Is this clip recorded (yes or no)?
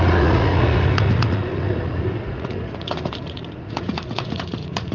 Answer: no